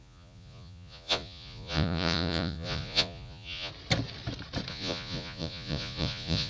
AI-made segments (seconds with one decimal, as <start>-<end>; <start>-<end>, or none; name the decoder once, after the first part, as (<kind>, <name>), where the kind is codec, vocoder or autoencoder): 0.0-3.7 (vocoder, Vocos); 4.7-6.5